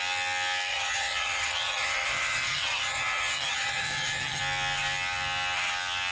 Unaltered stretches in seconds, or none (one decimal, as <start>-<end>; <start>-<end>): 0.0-0.7; 4.4-6.1